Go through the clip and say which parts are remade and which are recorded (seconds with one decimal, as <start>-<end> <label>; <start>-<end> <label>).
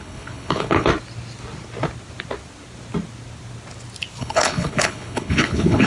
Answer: 0.0-0.9 remade; 0.9-4.2 recorded; 4.2-5.9 remade